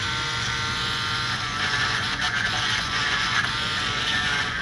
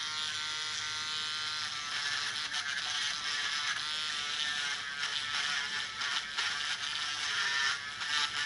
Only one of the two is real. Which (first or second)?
second